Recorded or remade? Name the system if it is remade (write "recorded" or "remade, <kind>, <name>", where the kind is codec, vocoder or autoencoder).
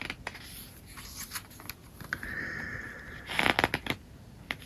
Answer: recorded